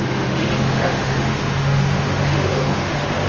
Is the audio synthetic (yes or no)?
yes